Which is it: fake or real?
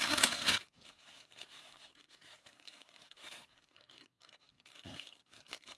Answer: fake